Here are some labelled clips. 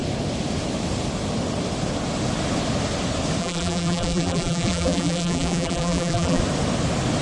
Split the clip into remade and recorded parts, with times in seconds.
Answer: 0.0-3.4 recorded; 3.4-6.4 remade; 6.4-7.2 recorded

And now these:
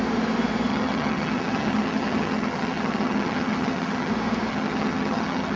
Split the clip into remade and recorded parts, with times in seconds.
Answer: 0.0-0.7 recorded; 0.7-4.1 remade; 4.1-4.5 recorded; 4.5-5.6 remade